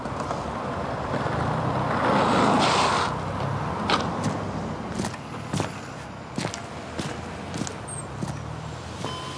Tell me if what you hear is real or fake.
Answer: real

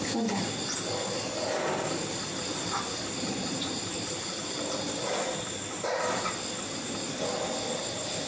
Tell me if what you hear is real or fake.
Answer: real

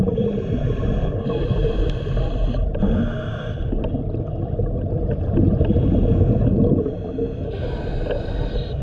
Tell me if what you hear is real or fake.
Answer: real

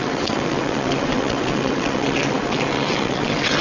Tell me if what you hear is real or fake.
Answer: fake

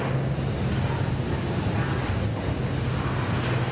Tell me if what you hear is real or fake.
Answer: real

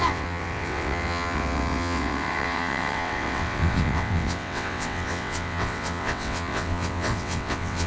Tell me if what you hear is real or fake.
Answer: fake